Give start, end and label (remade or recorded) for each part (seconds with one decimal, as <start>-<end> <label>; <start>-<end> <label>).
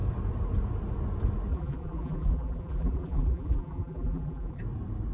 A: 0.0-1.5 recorded; 1.5-4.6 remade; 4.6-5.1 recorded